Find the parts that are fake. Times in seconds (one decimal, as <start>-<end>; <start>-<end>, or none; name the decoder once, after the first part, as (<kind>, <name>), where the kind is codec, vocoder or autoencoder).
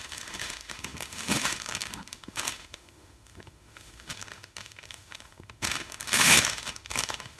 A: 0.0-7.4 (autoencoder, DAC-VAE)